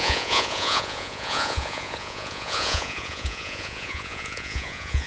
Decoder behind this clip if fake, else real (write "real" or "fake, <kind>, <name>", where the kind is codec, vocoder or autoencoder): fake, vocoder, Vocos